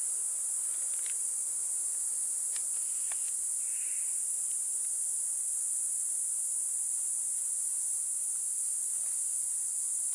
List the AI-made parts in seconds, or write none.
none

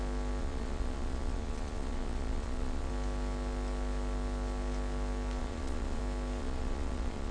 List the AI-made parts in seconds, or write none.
0.4-2.9 (vocoder, Vocos); 5.4-6.0; 6.4-7.3